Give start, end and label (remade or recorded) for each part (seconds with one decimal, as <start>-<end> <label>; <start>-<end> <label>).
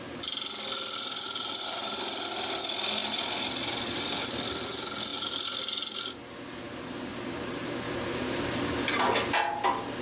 0.0-10.0 recorded